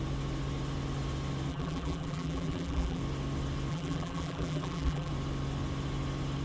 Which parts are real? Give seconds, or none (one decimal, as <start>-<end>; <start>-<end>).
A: 0.0-1.5; 3.0-3.7; 5.1-6.4